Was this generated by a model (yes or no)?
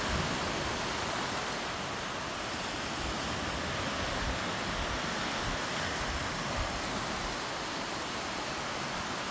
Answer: no